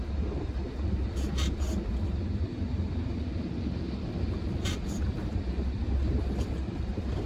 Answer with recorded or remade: recorded